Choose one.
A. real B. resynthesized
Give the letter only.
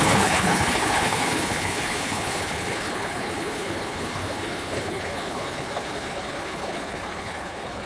B